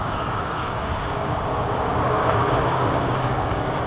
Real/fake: fake